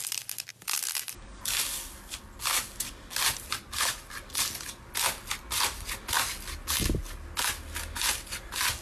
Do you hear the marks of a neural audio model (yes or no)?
no